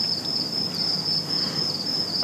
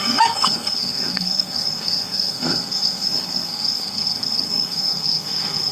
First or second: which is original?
first